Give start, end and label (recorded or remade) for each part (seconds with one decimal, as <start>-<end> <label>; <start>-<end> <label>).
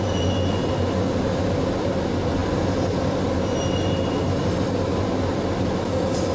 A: 0.0-6.3 recorded